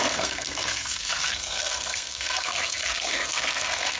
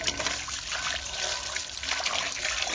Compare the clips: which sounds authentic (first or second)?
second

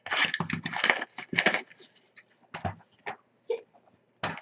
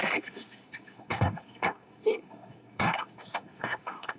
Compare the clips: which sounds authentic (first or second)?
first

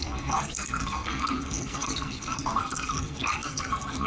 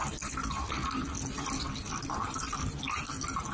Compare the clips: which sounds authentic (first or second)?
second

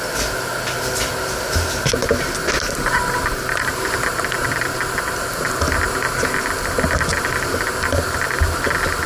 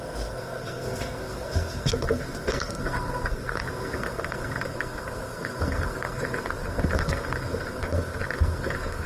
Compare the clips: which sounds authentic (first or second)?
first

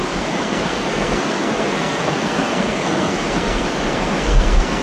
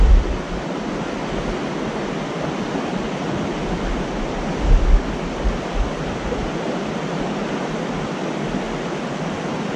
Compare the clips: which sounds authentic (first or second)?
second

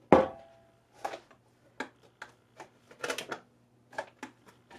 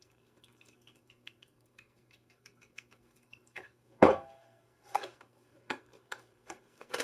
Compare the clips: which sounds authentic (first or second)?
first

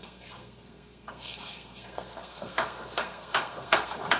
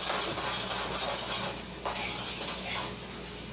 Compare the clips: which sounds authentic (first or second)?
second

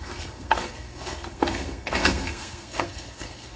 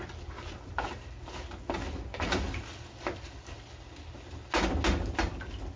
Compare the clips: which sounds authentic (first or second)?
second